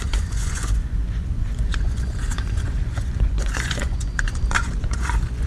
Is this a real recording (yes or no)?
no